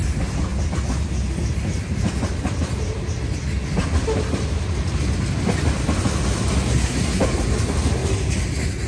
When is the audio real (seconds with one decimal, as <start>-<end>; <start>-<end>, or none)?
0.0-6.7; 7.2-8.9